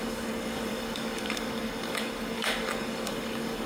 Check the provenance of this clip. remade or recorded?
remade